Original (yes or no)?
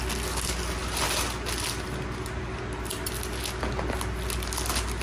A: yes